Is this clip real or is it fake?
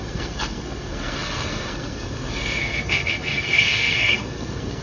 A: fake